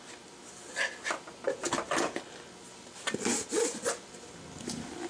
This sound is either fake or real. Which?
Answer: real